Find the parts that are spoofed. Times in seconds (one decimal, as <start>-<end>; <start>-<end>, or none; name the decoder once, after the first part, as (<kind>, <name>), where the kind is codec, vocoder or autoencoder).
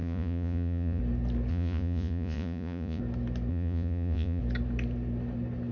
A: 0.0-1.0 (vocoder, Vocos); 1.5-3.0; 3.5-4.4